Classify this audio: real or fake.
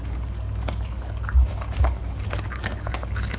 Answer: fake